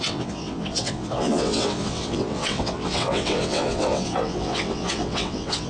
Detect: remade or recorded remade